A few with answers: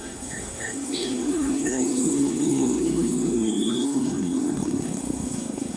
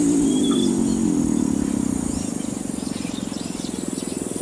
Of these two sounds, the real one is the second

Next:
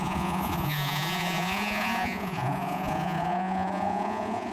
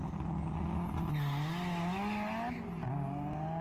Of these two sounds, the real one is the second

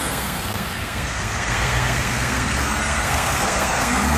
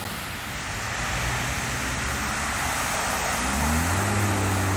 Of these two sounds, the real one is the second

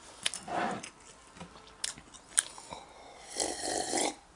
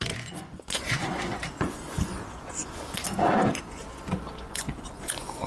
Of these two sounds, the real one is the first